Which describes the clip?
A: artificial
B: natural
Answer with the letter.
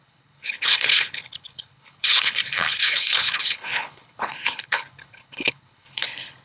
A